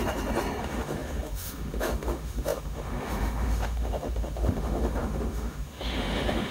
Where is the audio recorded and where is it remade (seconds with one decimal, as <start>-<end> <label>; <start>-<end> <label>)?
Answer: 0.0-0.6 recorded; 0.6-6.5 remade